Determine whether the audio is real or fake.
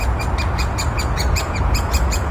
fake